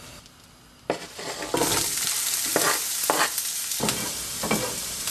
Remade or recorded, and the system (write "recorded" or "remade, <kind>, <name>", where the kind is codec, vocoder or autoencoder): remade, vocoder, BigVGAN v2